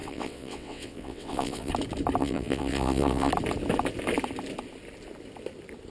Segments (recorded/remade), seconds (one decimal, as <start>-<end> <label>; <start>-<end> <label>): 0.0-1.7 remade; 1.7-2.2 recorded; 2.2-3.3 remade; 3.3-5.9 recorded